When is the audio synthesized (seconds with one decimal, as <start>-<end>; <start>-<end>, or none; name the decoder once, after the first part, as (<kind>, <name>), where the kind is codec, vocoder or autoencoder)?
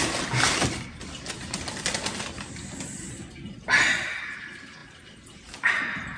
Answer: none